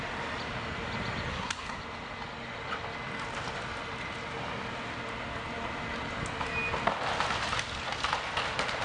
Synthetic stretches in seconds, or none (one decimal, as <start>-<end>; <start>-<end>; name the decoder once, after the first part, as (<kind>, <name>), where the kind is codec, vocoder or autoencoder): 1.3-1.8 (codec, SNAC)